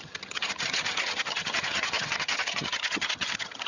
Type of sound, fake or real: fake